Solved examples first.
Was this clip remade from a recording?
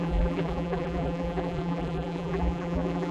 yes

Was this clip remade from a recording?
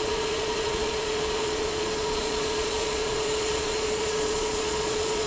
yes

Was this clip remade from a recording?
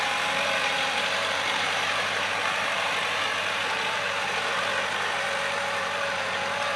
yes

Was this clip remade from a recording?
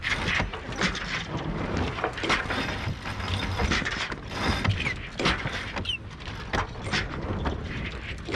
no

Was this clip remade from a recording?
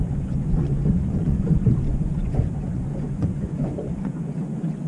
yes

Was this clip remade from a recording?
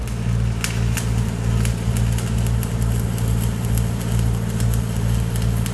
no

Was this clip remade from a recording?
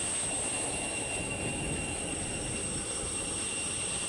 no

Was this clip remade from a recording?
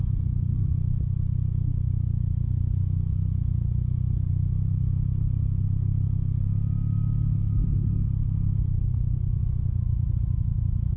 no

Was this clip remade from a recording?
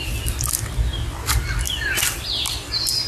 yes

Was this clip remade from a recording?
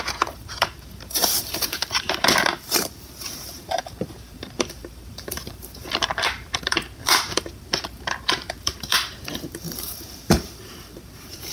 yes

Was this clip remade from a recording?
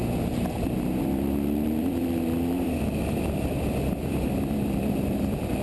yes